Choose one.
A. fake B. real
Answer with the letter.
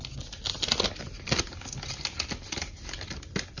B